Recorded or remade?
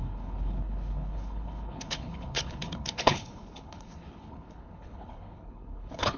remade